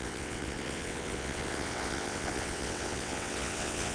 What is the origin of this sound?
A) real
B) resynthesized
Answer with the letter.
B